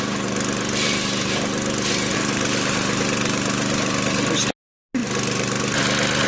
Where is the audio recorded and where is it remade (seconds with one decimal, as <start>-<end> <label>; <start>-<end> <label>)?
0.0-2.1 recorded; 2.1-3.0 remade; 3.0-6.3 recorded